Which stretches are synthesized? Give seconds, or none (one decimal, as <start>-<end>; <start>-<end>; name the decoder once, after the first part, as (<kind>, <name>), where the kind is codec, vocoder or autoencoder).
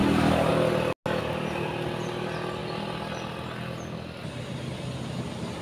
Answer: 0.0-0.5 (codec, DAC)